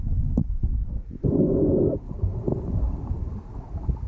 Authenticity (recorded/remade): recorded